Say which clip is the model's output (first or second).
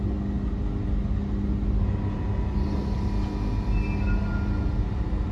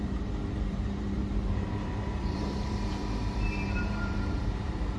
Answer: second